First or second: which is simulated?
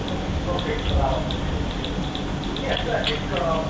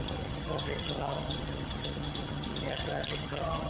second